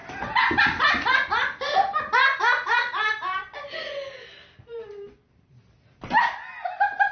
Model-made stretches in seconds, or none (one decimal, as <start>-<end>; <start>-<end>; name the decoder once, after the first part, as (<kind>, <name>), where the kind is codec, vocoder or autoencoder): none